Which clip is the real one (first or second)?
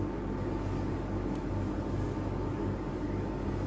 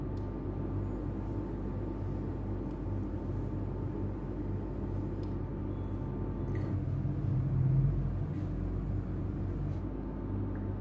second